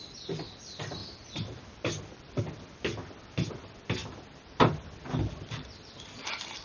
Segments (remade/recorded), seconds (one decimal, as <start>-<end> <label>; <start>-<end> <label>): 0.0-6.6 recorded